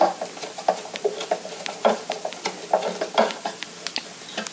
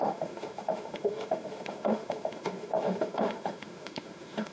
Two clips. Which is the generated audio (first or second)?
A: second